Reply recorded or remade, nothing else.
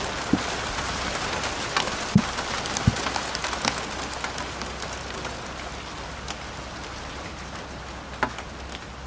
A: recorded